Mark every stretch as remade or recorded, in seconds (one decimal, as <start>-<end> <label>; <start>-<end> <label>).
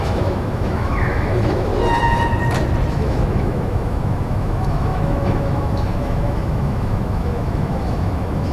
0.0-1.7 remade; 1.7-2.9 recorded; 2.9-8.5 remade